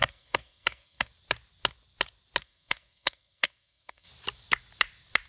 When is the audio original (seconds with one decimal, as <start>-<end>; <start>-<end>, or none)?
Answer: 1.1-2.4; 4.1-5.3